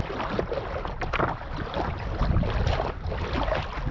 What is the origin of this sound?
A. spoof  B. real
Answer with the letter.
B